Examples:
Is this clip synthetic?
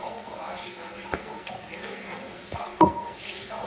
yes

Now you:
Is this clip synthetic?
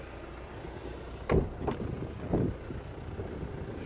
no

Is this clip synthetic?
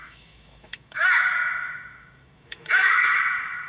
yes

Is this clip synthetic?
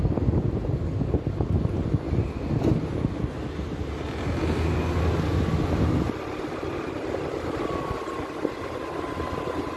no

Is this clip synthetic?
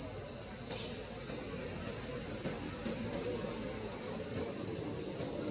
no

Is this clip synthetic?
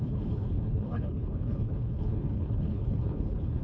yes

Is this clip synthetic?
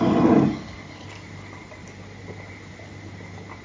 no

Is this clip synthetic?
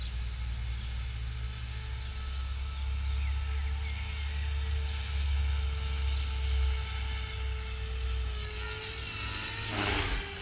no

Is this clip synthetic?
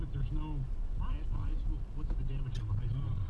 no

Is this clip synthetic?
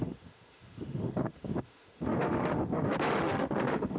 yes